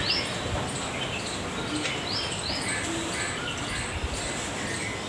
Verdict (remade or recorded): recorded